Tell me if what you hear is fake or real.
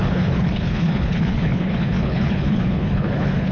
fake